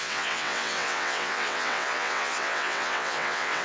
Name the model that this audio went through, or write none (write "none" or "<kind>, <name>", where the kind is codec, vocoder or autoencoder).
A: vocoder, WaveNeXt